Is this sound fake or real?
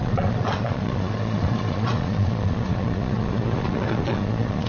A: fake